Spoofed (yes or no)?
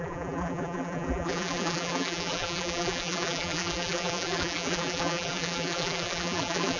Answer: yes